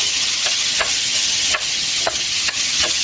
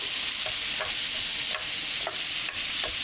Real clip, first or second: second